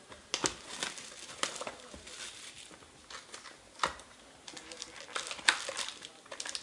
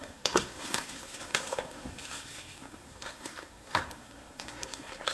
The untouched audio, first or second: first